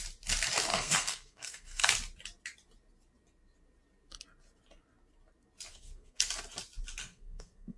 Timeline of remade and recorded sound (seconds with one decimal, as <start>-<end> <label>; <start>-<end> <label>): 0.0-0.7 recorded; 0.7-1.9 remade; 1.9-5.7 recorded; 5.7-6.3 remade; 6.3-7.0 recorded; 7.0-7.8 remade